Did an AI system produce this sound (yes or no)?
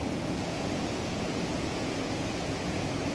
yes